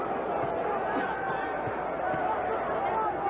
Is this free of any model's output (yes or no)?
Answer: yes